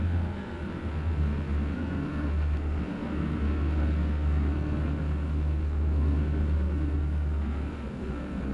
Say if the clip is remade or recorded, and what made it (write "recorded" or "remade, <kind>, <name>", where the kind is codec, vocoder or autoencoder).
remade, codec, SNAC